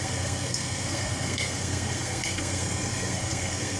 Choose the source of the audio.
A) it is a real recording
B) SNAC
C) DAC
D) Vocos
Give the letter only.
B